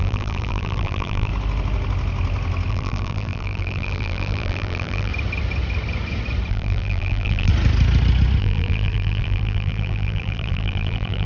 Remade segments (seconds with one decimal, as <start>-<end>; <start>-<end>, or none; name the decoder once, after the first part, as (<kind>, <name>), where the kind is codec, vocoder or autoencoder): 0.0-1.3 (vocoder, BigVGAN v2); 2.7-5.1; 6.5-7.5; 8.4-11.3